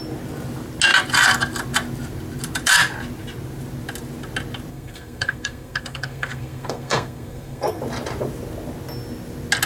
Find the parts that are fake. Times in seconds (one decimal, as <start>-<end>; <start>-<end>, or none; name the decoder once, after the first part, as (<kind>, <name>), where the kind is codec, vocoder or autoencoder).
4.7-7.8 (codec, SNAC)